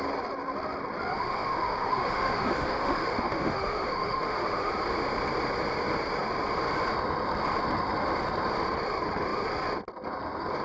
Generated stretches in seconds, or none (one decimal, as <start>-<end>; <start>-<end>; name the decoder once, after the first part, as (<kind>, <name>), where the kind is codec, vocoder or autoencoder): 1.1-4.7 (autoencoder, DAC-VAE)